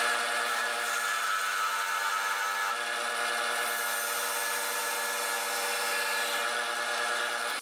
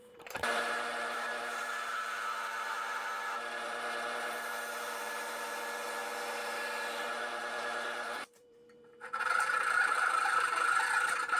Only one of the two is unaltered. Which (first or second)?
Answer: first